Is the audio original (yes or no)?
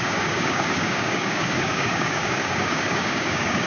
no